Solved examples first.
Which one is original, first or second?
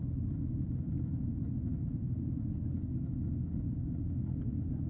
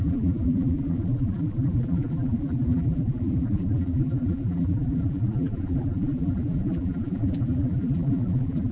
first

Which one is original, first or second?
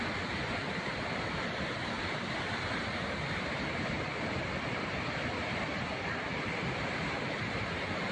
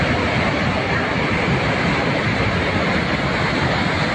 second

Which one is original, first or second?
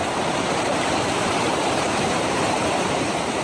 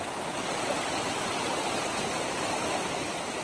second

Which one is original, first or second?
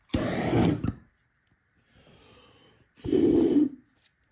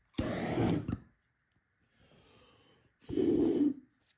second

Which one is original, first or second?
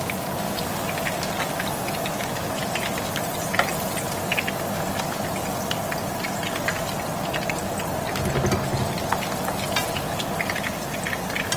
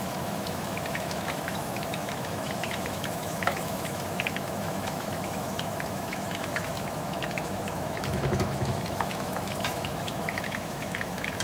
first